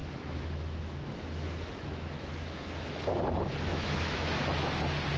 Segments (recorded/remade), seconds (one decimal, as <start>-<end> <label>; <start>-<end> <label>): 0.0-3.1 remade; 3.1-3.7 recorded; 3.7-4.8 remade; 4.8-5.2 recorded